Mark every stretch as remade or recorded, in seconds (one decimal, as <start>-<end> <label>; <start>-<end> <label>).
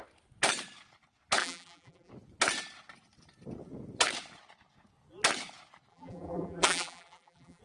0.0-1.4 recorded; 1.4-2.1 remade; 2.1-5.9 recorded; 5.9-7.6 remade